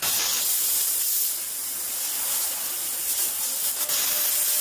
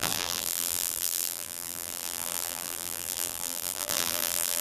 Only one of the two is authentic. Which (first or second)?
first